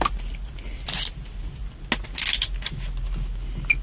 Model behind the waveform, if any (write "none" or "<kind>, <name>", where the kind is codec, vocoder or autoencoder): none